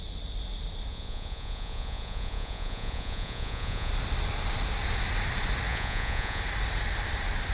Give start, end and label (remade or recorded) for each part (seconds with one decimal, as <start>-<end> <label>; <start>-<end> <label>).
0.0-0.9 recorded; 0.9-3.9 remade; 3.9-5.7 recorded; 5.7-6.4 remade; 6.4-7.5 recorded